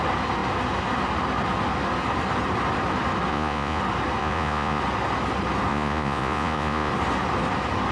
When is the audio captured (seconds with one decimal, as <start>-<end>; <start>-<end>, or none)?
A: 0.0-3.3; 3.8-4.2; 4.8-5.7; 6.9-7.9